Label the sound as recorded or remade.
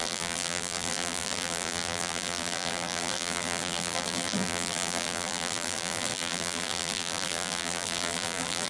remade